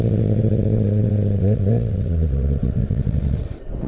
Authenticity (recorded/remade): remade